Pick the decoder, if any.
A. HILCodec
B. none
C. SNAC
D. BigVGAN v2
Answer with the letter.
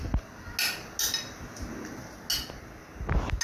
B